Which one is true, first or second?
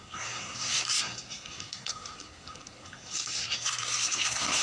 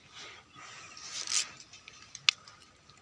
second